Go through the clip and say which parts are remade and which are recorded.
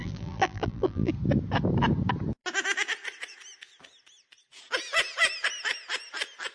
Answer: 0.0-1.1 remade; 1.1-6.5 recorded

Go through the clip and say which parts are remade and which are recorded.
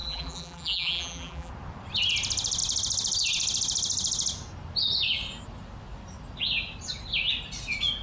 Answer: 0.0-1.5 remade; 1.5-8.0 recorded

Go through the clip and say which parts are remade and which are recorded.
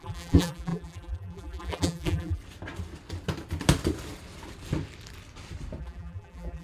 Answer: 0.0-2.4 remade; 2.4-5.8 recorded; 5.8-6.6 remade